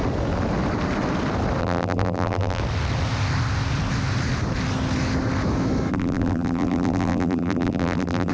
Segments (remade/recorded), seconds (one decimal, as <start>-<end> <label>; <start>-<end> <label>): 0.0-1.6 recorded; 1.6-2.6 remade; 2.6-5.9 recorded; 5.9-8.3 remade